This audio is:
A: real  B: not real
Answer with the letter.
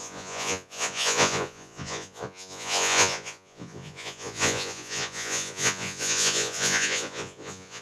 B